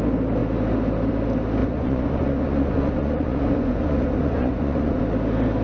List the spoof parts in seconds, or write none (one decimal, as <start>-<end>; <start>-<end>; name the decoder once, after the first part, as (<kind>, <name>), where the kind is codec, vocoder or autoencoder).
1.6-5.0 (vocoder, Vocos)